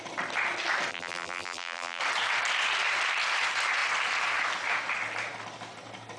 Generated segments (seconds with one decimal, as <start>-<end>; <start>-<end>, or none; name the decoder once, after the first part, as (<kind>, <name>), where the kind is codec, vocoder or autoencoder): 0.9-2.0 (vocoder, BigVGAN v2)